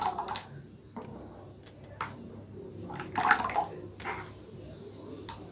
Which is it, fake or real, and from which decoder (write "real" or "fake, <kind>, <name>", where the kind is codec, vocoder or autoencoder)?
real